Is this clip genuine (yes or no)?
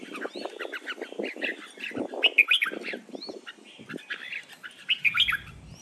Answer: yes